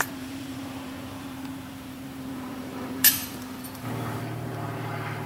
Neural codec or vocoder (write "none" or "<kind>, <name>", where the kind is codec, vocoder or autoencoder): vocoder, BigVGAN v2